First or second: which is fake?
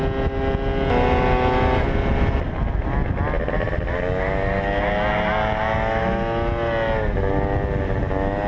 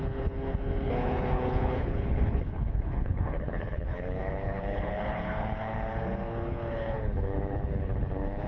second